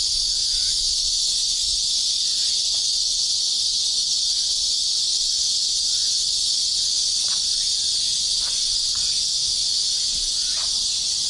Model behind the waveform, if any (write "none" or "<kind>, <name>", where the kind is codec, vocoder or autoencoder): vocoder, Vocos